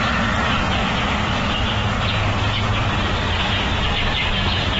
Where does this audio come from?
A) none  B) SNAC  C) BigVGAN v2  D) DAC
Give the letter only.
A